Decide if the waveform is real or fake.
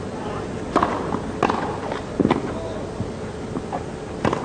real